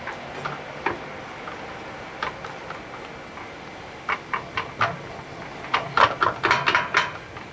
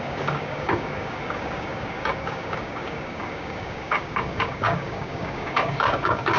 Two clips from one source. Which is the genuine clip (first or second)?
first